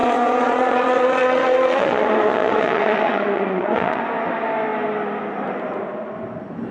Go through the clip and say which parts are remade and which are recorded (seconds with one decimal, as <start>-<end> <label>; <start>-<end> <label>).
0.0-4.0 remade; 4.0-6.7 recorded